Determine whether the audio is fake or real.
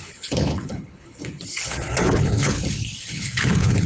fake